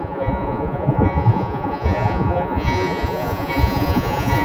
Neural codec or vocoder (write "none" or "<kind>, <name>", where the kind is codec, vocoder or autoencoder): vocoder, Vocos